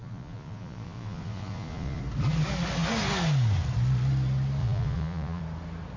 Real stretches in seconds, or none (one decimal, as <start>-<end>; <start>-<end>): 2.0-4.6; 5.4-6.0